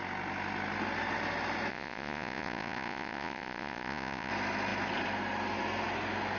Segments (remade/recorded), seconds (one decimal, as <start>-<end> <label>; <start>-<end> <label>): 0.0-1.7 recorded; 1.7-4.3 remade; 4.3-6.4 recorded